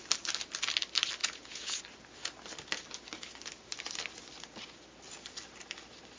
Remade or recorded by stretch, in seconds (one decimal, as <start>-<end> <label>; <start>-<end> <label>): 0.0-1.2 recorded; 1.2-1.8 remade; 1.8-6.2 recorded